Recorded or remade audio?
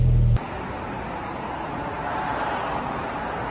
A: recorded